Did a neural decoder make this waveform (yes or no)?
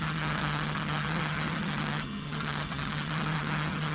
yes